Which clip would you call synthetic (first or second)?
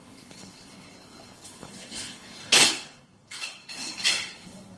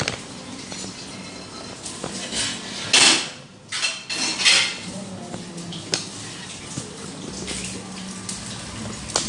first